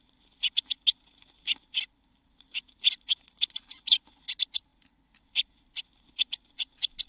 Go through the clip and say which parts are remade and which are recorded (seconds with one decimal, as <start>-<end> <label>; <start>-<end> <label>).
0.0-7.1 recorded